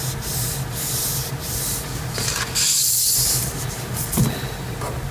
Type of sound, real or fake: real